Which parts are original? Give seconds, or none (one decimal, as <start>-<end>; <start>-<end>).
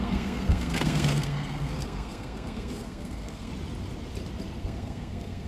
3.5-4.6